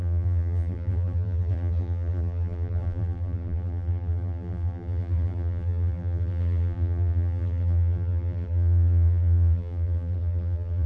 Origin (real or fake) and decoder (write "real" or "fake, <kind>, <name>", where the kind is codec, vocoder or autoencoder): fake, vocoder, BigVGAN v2